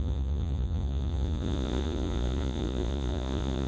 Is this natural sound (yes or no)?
no